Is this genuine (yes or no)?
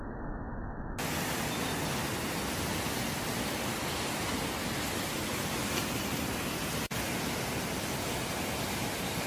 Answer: yes